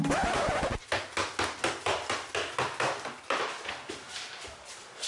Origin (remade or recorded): recorded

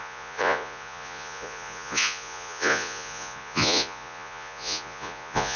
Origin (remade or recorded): remade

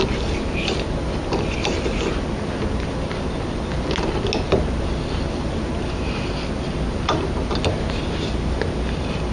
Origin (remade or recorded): recorded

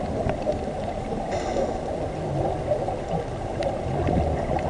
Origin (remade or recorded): recorded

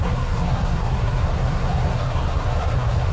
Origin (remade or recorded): remade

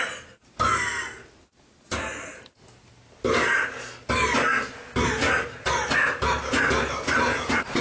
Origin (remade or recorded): recorded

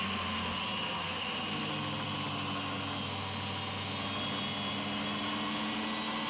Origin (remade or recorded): recorded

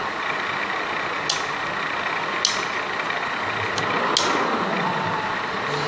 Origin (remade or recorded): recorded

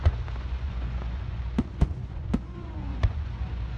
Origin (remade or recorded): remade